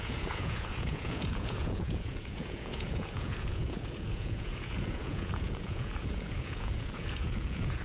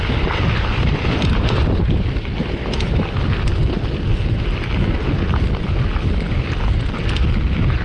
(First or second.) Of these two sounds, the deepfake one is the first